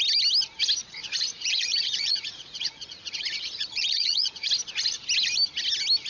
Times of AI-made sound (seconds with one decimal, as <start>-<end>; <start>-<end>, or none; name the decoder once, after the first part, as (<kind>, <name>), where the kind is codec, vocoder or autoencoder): 0.8-4.5 (vocoder, Vocos)